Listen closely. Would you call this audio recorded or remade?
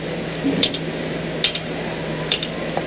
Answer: recorded